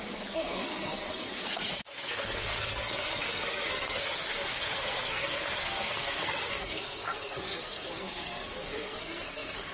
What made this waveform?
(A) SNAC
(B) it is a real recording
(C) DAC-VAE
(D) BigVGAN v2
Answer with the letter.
A